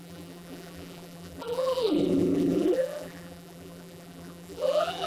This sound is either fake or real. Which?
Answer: fake